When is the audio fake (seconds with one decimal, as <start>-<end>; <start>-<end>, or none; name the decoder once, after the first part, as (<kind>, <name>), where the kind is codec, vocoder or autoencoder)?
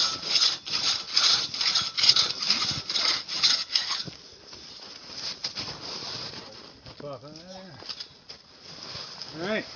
4.3-6.2 (vocoder, BigVGAN v2)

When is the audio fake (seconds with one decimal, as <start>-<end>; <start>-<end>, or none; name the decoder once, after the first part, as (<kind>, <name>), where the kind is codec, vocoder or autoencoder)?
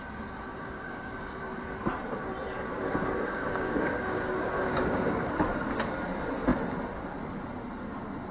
0.5-1.4 (codec, DAC); 2.7-5.3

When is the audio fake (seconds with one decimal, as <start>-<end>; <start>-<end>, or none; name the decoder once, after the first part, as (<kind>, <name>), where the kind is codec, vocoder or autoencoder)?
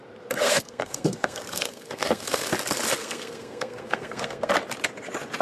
0.4-2.5 (codec, SNAC); 3.0-4.5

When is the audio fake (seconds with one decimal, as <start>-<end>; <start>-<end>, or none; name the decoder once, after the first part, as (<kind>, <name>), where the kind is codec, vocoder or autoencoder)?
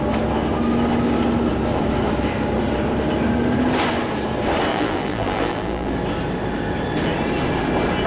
4.7-5.9 (vocoder, BigVGAN v2)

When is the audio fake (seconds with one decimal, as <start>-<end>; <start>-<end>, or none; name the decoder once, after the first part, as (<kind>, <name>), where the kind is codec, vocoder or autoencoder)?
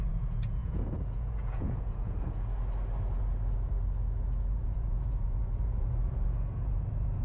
0.0-2.6 (vocoder, Vocos); 4.5-7.2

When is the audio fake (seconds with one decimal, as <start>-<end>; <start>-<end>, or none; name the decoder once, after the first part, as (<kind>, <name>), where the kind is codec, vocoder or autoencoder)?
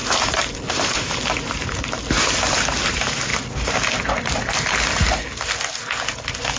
0.0-3.3 (vocoder, BigVGAN v2)